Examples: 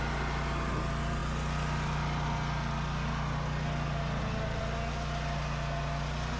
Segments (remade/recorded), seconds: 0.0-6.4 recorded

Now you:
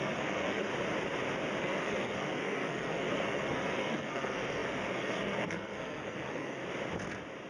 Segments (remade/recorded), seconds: 0.0-0.7 remade; 0.7-1.6 recorded; 1.6-6.6 remade; 6.6-7.5 recorded

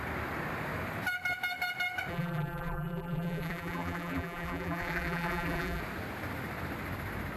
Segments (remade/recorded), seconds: 0.0-2.1 recorded; 2.1-5.8 remade; 5.8-7.4 recorded

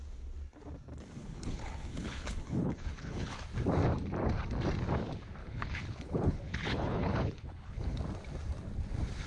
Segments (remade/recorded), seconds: 0.0-1.2 recorded; 1.2-3.4 remade; 3.4-5.4 recorded; 5.4-8.0 remade; 8.0-9.3 recorded

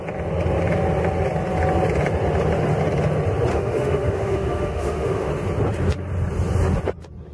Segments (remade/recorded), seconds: 0.0-3.5 recorded; 3.5-5.3 remade; 5.3-7.3 recorded